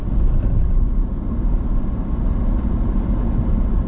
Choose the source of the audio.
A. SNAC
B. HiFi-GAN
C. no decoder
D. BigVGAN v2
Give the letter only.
D